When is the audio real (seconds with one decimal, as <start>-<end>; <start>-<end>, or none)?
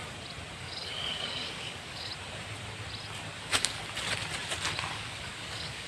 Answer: 0.0-0.6; 2.1-3.4; 3.8-4.9